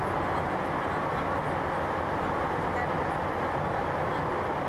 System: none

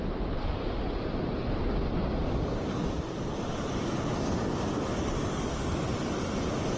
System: none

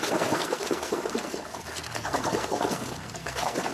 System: codec, SNAC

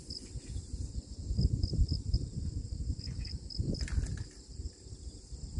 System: vocoder, BigVGAN v2